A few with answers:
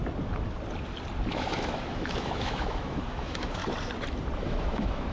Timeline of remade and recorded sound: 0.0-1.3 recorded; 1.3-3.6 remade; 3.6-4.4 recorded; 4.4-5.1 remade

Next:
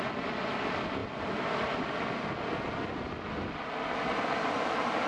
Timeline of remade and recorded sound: 0.0-5.1 recorded

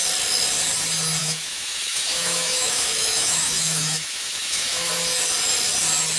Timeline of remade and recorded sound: 0.0-1.2 recorded; 1.2-4.9 remade; 4.9-6.2 recorded